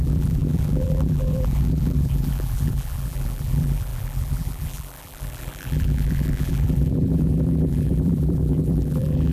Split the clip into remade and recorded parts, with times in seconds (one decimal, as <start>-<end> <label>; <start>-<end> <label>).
0.0-9.3 remade